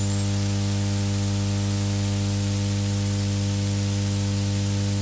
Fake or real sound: real